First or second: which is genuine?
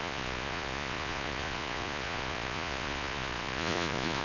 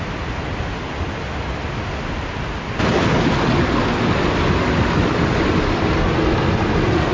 second